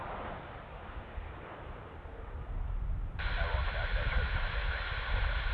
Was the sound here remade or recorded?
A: recorded